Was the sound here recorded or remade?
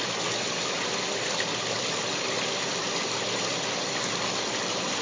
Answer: recorded